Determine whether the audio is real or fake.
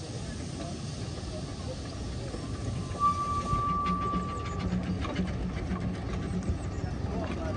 real